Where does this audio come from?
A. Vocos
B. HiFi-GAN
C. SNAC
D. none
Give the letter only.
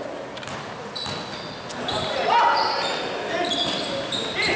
D